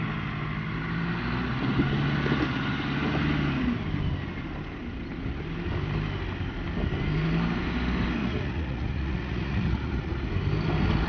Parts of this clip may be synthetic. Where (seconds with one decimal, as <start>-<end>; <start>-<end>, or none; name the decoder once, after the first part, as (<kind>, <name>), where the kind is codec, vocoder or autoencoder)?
8.2-10.3 (vocoder, Vocos)